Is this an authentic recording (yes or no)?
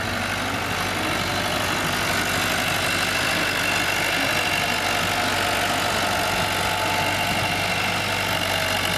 yes